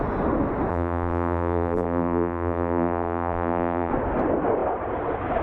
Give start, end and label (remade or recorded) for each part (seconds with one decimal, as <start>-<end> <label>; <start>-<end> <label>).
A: 0.0-0.7 recorded; 0.7-3.9 remade; 3.9-5.4 recorded